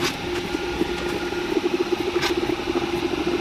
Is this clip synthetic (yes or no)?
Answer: no